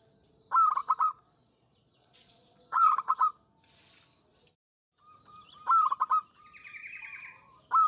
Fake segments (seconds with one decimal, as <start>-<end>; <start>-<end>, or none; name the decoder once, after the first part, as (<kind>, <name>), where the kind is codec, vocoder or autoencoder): 0.8-3.3 (vocoder, Vocos)